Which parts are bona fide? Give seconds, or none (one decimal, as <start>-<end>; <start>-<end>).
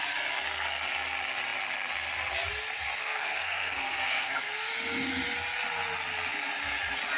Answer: 0.0-3.0; 4.7-7.2